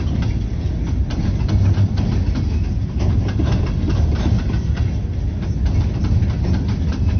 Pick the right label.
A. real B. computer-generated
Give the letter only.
A